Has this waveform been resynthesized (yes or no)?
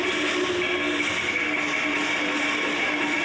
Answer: no